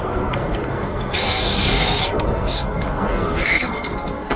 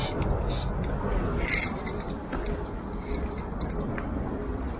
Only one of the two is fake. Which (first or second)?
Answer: first